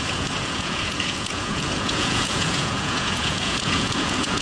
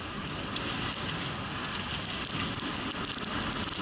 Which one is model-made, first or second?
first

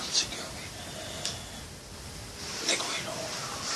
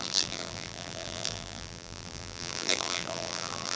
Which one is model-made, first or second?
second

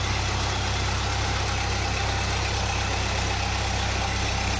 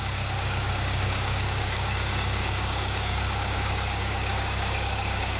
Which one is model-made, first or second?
second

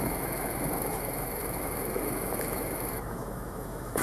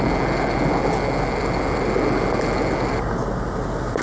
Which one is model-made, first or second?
first